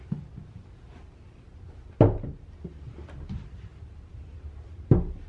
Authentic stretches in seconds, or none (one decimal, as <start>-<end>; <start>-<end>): 0.0-5.3